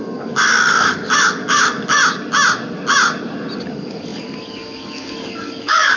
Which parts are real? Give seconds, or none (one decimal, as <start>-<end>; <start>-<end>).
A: 2.0-3.6